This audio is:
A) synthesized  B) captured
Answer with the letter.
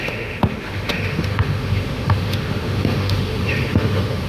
A